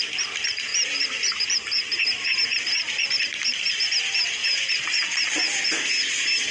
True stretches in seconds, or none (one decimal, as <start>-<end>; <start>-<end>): 0.0-0.7; 1.6-4.4; 5.7-6.5